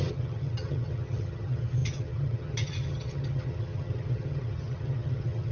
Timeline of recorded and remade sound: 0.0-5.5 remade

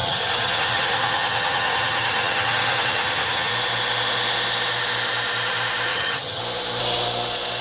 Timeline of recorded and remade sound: 0.0-3.5 remade; 3.5-5.9 recorded; 5.9-6.4 remade; 6.4-7.6 recorded

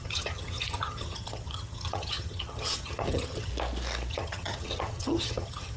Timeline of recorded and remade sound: 0.0-3.5 remade; 3.5-4.1 recorded; 4.1-5.8 remade

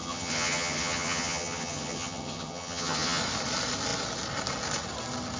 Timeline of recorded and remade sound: 0.0-3.2 remade; 3.2-5.4 recorded

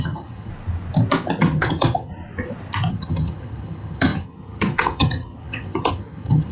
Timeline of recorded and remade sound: 0.0-0.5 remade; 0.5-1.4 recorded; 1.4-2.1 remade; 2.1-2.9 recorded; 2.9-6.5 remade